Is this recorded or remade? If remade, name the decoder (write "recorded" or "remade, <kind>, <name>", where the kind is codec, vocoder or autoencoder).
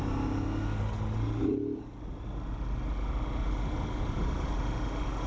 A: recorded